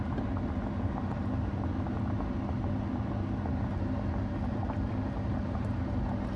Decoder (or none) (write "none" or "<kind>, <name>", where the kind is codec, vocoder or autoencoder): none